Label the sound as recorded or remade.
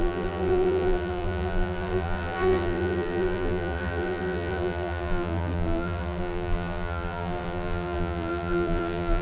remade